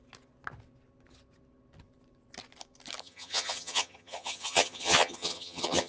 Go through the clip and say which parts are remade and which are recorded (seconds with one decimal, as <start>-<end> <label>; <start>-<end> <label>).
0.0-3.0 recorded; 3.0-5.9 remade